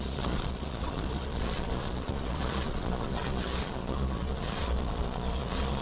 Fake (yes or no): yes